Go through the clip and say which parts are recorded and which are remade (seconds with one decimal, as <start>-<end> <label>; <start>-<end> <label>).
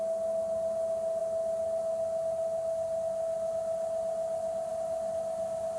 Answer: 0.0-5.8 recorded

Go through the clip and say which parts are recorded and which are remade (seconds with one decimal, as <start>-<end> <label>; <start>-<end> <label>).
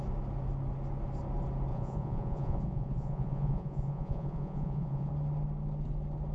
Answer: 0.0-1.7 recorded; 1.7-5.1 remade; 5.1-6.3 recorded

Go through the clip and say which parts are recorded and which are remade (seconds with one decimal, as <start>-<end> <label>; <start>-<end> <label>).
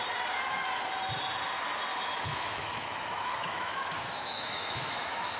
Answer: 0.0-1.9 recorded; 1.9-5.4 remade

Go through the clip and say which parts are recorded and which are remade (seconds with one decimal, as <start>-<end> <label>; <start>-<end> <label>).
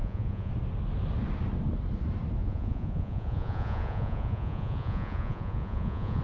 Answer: 0.0-0.5 remade; 0.5-2.4 recorded; 2.4-6.2 remade